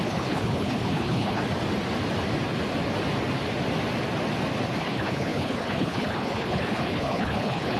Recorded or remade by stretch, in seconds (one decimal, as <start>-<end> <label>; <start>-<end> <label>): 0.0-1.4 remade; 1.4-4.8 recorded; 4.8-7.8 remade